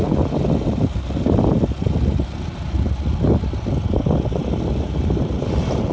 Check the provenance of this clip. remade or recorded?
recorded